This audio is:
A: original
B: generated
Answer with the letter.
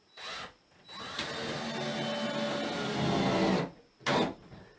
A